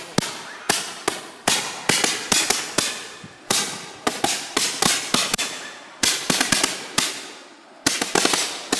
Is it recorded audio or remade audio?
recorded